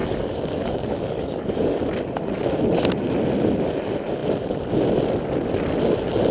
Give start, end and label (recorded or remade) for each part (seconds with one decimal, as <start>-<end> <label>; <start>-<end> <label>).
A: 0.0-1.8 remade; 1.8-6.3 recorded